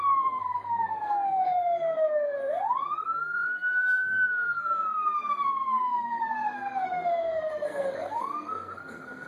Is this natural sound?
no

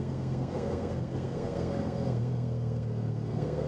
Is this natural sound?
no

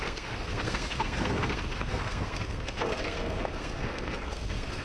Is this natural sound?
no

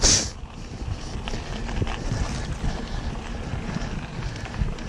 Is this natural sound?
yes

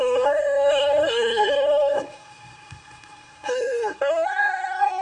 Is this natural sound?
no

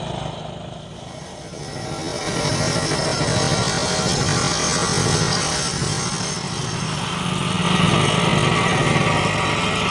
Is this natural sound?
yes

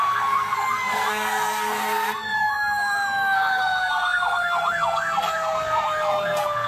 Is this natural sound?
no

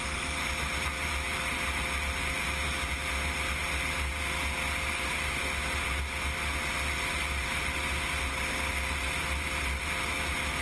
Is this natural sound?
yes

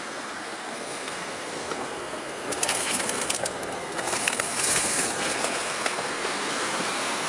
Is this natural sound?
no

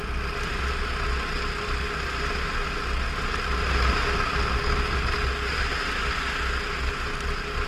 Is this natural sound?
yes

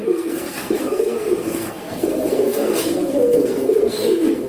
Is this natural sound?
no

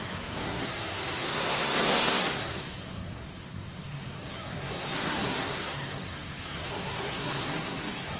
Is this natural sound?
no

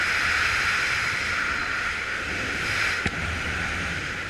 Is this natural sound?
yes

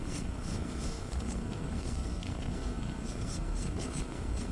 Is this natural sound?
no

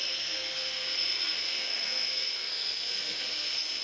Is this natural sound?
no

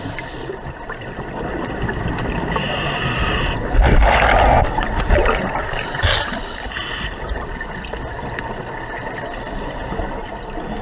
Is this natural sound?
yes